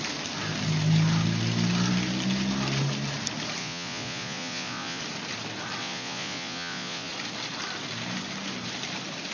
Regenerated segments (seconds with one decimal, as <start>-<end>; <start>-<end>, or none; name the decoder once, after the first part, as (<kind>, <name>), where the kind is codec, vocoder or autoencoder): 3.6-5.0 (vocoder, Vocos); 5.8-7.1